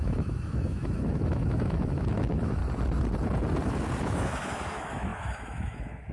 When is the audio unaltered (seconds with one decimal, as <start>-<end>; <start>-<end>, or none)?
2.6-4.0